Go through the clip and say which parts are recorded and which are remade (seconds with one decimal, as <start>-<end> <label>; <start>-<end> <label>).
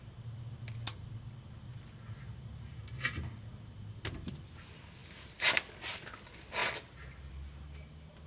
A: 0.0-8.3 recorded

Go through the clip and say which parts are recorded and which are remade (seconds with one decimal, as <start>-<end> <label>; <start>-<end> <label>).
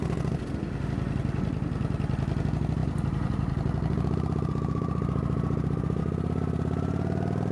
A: 0.0-2.8 recorded; 2.8-6.0 remade; 6.0-7.5 recorded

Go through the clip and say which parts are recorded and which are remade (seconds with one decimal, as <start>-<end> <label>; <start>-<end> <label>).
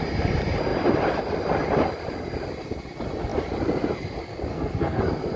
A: 0.0-4.5 recorded; 4.5-5.0 remade; 5.0-5.4 recorded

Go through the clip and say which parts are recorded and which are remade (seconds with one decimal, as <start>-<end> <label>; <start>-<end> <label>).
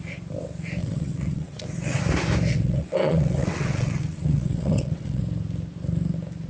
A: 0.0-0.8 recorded; 0.8-2.0 remade; 2.0-2.5 recorded; 2.5-5.2 remade; 5.2-6.5 recorded